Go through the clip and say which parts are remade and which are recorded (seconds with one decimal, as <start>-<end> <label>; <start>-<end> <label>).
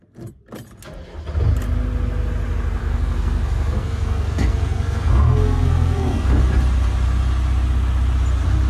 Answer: 0.0-2.8 recorded; 2.8-6.4 remade; 6.4-8.7 recorded